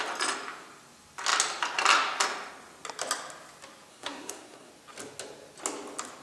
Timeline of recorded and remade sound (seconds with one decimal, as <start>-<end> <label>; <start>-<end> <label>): 0.0-3.9 recorded; 3.9-4.7 remade; 4.7-6.2 recorded